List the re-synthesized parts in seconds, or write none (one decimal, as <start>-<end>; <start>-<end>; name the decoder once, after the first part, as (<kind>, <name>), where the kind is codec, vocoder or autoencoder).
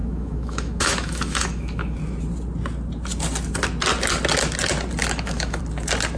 0.0-2.0 (autoencoder, DAC-VAE); 5.0-5.6